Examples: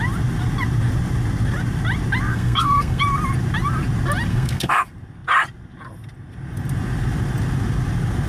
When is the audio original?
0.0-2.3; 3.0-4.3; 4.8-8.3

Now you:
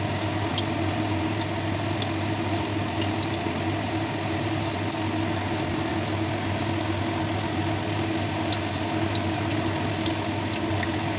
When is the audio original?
0.0-11.2

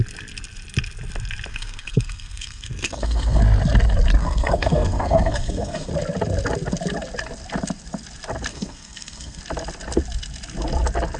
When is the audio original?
0.0-1.5; 3.4-4.2; 5.9-8.5; 9.4-11.2